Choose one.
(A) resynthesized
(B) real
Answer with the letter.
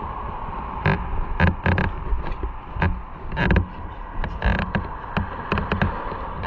B